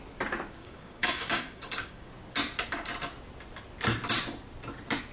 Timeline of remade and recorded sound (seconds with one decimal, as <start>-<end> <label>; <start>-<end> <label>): 0.0-0.6 recorded; 0.6-2.1 remade; 2.1-5.1 recorded